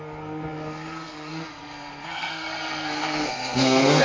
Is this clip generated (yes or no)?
yes